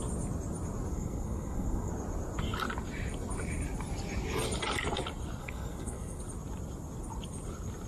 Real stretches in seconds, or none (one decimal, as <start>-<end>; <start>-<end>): 0.0-0.9; 1.9-5.4; 6.2-7.9